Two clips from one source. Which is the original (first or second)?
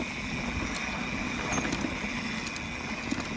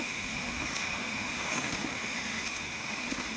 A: first